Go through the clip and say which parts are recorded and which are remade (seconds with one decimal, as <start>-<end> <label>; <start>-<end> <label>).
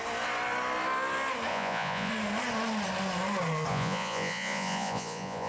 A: 0.0-1.5 recorded; 1.5-2.1 remade; 2.1-3.7 recorded; 3.7-5.5 remade